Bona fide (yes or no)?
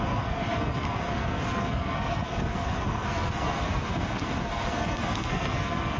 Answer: no